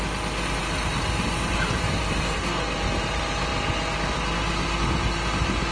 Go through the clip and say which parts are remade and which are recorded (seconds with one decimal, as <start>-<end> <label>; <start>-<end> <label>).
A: 0.0-5.7 recorded